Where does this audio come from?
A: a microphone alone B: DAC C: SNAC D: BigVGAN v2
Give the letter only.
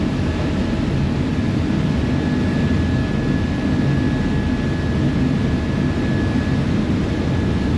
A